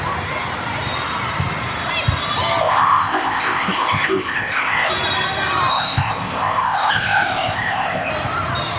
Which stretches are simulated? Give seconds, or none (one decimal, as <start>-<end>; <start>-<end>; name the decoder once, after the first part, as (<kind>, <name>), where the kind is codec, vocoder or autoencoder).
2.6-4.9 (codec, ZipCodec); 5.7-8.1